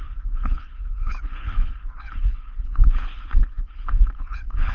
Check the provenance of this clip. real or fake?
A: fake